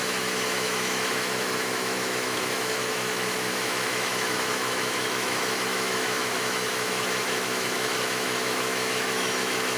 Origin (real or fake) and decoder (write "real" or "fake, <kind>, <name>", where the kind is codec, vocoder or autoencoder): fake, autoencoder, DAC-VAE